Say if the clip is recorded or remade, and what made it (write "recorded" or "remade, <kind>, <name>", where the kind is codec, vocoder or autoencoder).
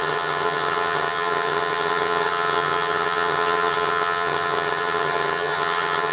remade, vocoder, HiFi-GAN